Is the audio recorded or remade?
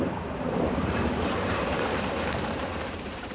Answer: remade